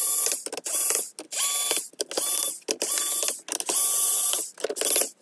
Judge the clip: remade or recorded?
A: recorded